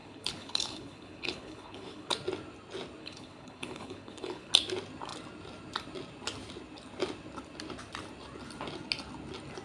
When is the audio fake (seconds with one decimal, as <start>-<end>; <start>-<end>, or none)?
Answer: 0.0-2.1; 3.0-4.5